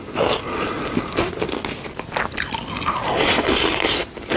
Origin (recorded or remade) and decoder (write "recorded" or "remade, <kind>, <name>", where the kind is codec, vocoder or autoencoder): recorded